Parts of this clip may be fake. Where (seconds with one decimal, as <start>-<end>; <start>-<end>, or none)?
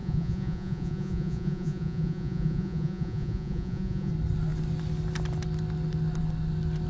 0.0-4.1